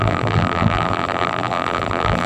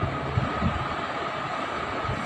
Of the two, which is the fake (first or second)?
first